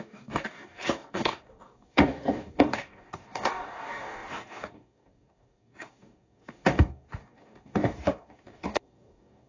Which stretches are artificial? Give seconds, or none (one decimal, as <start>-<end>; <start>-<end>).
0.0-9.5